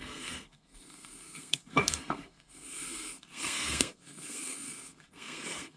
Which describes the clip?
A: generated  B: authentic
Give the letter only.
A